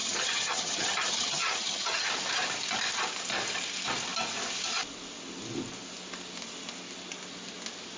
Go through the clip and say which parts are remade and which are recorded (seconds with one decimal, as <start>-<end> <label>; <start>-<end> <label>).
0.0-2.1 remade; 2.1-8.0 recorded